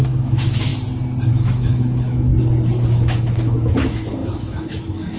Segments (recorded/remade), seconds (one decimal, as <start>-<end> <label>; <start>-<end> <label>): 0.0-0.7 remade; 0.7-1.3 recorded; 1.3-2.3 remade; 2.3-2.9 recorded; 2.9-5.2 remade